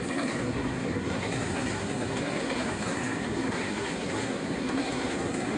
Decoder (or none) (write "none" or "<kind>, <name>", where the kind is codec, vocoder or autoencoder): codec, SNAC